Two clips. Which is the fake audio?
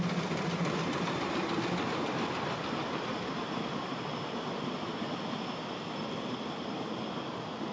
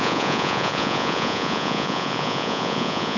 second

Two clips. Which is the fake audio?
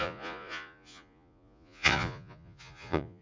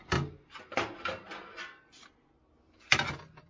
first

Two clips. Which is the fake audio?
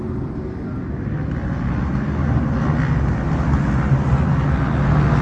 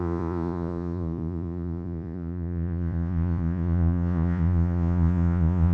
second